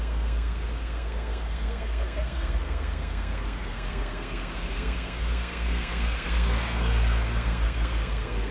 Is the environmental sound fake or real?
fake